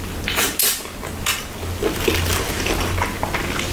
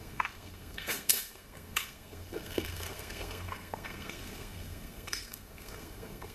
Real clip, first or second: first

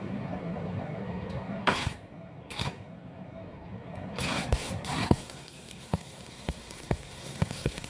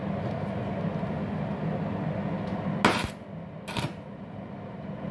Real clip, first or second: second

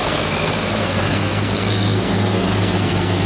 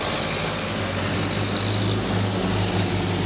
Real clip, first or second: second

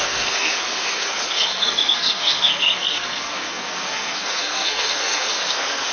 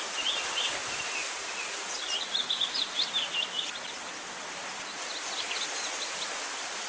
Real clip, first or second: second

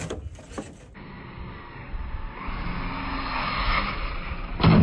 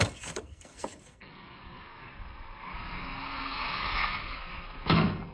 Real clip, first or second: first